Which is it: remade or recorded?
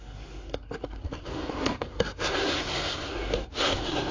remade